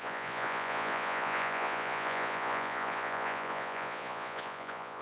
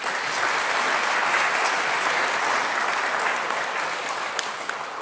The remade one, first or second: first